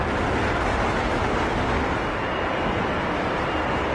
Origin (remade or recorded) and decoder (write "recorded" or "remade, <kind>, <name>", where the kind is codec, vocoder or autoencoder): recorded